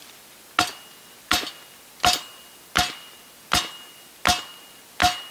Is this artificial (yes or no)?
no